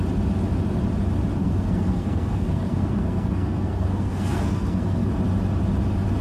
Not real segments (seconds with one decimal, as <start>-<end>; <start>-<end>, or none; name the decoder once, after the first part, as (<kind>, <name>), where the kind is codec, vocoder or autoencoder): 1.4-5.1 (codec, SNAC)